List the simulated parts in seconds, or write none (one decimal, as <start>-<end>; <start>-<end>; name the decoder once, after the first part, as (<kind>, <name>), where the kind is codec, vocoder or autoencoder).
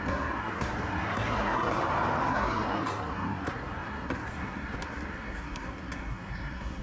0.0-1.8 (codec, SNAC); 2.3-6.8